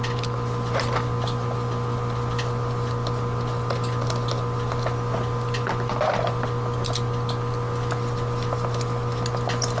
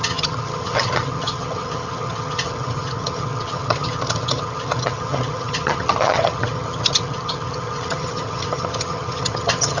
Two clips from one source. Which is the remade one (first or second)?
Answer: second